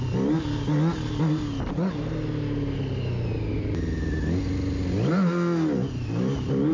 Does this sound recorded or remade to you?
recorded